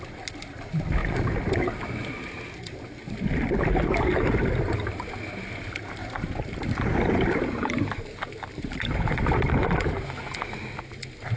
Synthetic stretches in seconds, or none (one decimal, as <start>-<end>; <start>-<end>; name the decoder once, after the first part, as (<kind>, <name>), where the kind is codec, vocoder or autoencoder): 1.0-1.9 (vocoder, BigVGAN v2); 6.0-8.0; 8.5-9.2